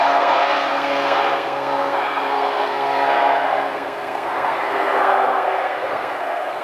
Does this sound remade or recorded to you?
remade